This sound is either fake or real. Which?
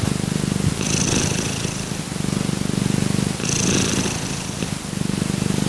real